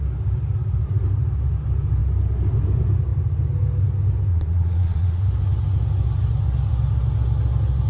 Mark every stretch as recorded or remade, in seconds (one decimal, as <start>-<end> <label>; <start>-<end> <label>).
0.0-4.3 recorded; 4.3-5.2 remade; 5.2-7.9 recorded

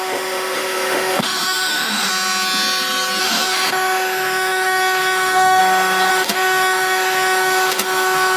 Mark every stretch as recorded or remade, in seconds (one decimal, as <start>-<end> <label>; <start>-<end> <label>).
0.0-2.1 remade; 2.1-3.2 recorded; 3.2-5.6 remade; 5.6-6.1 recorded; 6.1-8.4 remade

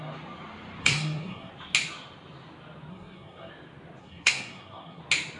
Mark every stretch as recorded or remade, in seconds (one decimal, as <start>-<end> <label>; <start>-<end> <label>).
0.0-0.8 recorded; 0.8-1.5 remade; 1.5-2.9 recorded; 2.9-3.5 remade; 3.5-4.0 recorded; 4.0-5.0 remade; 5.0-5.4 recorded

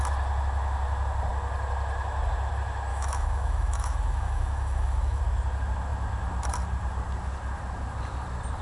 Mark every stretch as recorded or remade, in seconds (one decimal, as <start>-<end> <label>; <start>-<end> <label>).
0.0-2.9 recorded; 2.9-5.2 remade; 5.2-8.6 recorded

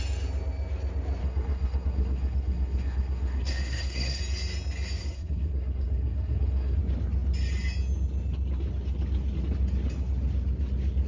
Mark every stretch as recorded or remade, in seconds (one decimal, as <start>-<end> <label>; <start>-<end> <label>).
0.0-1.2 recorded; 1.2-4.2 remade; 4.2-5.0 recorded; 5.0-6.8 remade; 6.8-11.1 recorded